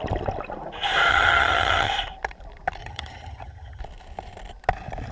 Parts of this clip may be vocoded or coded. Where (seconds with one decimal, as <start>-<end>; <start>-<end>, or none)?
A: 1.1-1.9; 2.8-3.8